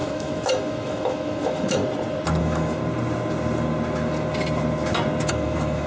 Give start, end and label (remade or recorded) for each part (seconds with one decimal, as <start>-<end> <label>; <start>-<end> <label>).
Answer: 0.0-1.8 remade; 1.8-2.4 recorded; 2.4-2.8 remade; 2.8-5.3 recorded; 5.3-5.9 remade